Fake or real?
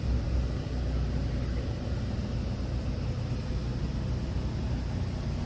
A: real